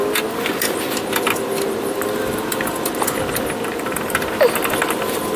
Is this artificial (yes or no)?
no